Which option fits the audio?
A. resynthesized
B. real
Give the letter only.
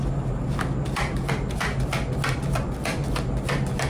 B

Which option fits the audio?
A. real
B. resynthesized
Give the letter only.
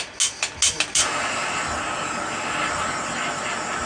A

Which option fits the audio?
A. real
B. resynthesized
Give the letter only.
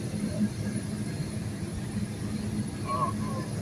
A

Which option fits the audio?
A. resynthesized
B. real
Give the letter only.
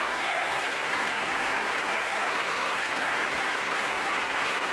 A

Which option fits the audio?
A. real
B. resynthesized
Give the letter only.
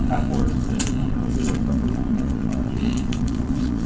B